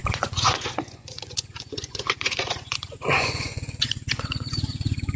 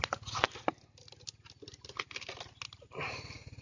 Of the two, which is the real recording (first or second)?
second